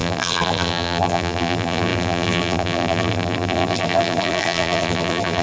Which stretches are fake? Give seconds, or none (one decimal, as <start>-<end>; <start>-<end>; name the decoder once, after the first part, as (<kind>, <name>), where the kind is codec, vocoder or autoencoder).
0.0-5.4 (vocoder, BigVGAN v2)